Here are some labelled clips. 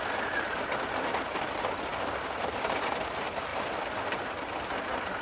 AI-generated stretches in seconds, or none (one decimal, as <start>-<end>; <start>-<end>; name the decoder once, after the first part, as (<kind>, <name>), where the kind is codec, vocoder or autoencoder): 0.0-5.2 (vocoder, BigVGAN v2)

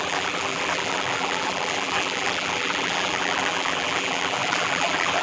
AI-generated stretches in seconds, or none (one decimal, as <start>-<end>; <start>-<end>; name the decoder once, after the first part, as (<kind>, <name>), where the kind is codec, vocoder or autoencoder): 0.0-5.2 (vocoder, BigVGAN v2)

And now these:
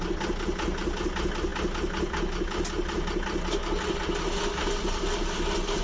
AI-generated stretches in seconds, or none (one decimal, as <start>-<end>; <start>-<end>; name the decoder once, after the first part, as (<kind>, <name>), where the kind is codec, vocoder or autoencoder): none

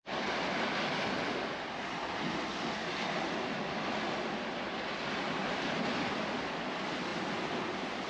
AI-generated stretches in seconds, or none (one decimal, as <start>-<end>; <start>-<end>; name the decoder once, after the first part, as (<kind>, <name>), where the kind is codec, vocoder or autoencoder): 2.5-3.5 (vocoder, BigVGAN v2); 5.4-6.5

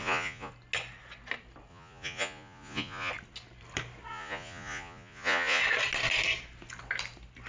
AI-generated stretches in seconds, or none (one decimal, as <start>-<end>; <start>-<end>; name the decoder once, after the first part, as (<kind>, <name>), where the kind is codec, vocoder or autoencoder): 0.0-0.5 (vocoder, Vocos); 1.7-3.1; 4.1-5.6